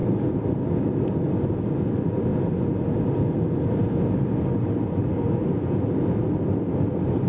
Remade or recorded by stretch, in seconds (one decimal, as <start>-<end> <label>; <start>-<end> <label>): 0.0-7.3 recorded